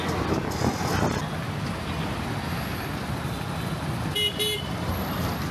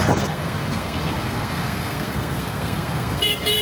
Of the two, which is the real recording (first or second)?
first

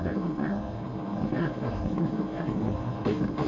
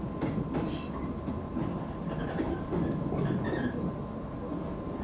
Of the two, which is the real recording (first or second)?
second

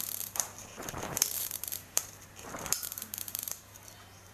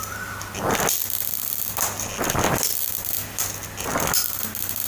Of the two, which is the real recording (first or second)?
second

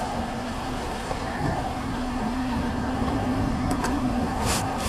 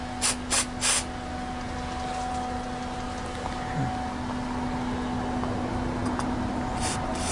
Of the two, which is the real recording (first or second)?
second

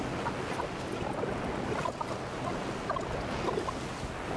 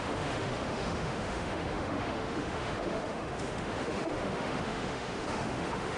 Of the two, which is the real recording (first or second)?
first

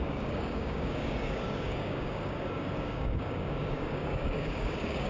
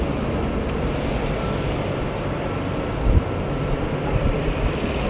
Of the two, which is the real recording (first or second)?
second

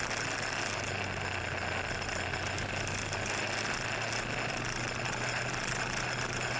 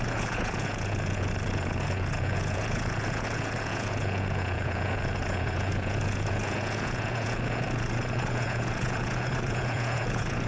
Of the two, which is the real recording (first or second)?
first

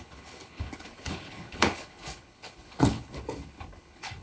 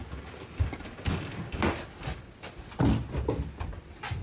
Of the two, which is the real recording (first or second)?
second